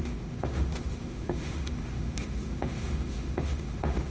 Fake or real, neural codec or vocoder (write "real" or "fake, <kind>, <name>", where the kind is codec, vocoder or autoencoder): fake, autoencoder, DAC-VAE